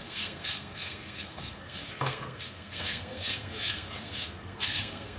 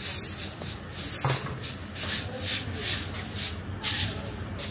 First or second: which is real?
second